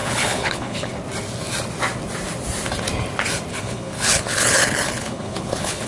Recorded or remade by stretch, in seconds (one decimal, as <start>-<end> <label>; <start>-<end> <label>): 0.0-0.9 remade; 0.9-3.5 recorded; 3.5-5.9 remade